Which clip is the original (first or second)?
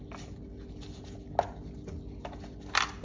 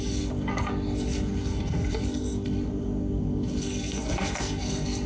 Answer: first